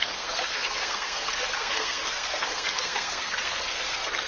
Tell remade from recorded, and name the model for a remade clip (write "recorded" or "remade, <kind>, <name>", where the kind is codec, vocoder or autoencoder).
remade, codec, SNAC